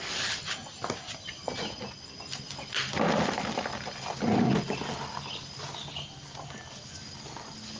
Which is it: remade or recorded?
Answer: recorded